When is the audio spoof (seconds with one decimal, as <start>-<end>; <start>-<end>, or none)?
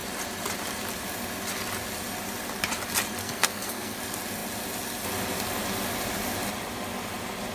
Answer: 3.2-4.0